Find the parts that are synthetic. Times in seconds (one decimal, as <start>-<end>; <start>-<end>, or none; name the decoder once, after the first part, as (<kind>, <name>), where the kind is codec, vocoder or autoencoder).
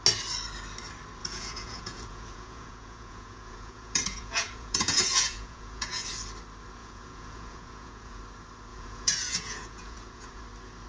1.2-6.1 (vocoder, Vocos); 6.8-8.2; 8.7-10.4